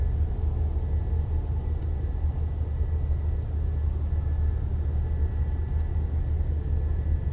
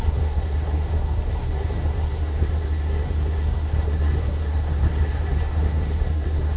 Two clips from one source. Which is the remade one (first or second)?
second